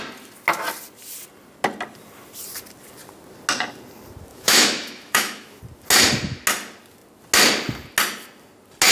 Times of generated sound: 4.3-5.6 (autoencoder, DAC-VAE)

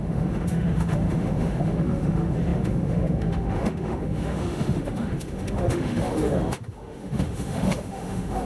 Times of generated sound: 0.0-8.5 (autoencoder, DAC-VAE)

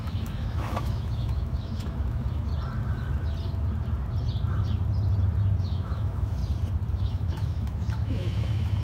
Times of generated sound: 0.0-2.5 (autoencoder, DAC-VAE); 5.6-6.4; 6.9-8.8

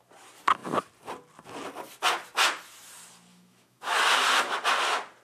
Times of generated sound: 3.3-4.0 (autoencoder, DAC-VAE)

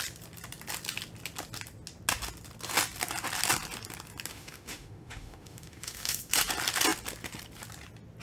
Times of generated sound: 4.3-6.3 (autoencoder, DAC-VAE)

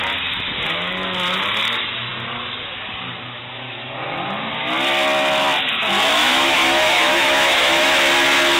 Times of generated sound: 6.2-7.9 (autoencoder, DAC-VAE)

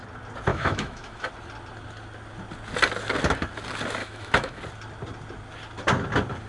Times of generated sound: 0.5-1.3 (autoencoder, DAC-VAE); 4.0-4.6